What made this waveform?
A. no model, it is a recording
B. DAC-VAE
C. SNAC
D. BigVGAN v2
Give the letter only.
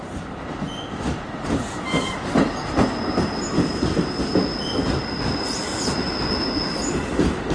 A